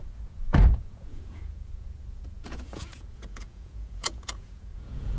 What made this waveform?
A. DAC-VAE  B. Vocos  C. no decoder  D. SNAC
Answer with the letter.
B